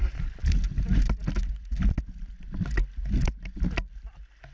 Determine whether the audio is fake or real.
real